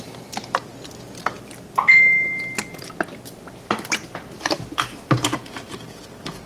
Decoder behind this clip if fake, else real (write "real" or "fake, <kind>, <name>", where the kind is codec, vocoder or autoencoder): real